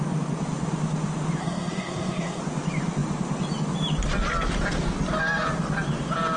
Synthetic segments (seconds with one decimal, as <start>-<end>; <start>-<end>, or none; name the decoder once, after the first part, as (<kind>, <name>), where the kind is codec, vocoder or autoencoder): 1.4-2.4 (codec, SNAC)